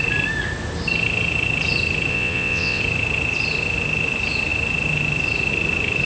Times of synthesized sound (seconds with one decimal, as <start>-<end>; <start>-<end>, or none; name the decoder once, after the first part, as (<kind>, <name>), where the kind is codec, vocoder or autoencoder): 2.1-2.8 (vocoder, WaveNeXt)